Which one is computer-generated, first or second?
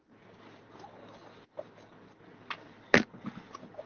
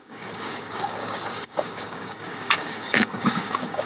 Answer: second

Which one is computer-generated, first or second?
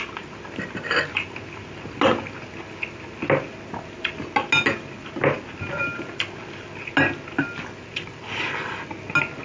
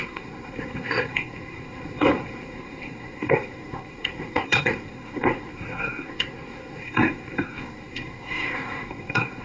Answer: second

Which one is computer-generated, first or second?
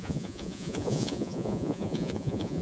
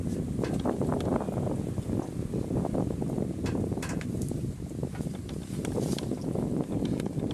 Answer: first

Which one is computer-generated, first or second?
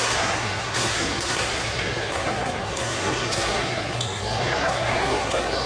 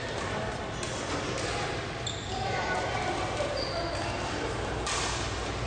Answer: first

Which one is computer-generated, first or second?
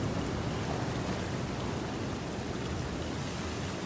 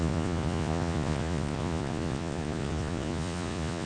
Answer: second